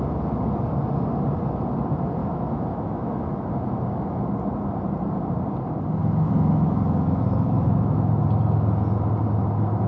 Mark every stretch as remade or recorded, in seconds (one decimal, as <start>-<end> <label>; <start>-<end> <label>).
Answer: 0.0-2.2 recorded; 2.2-4.3 remade; 4.3-6.0 recorded; 6.0-8.2 remade; 8.2-9.9 recorded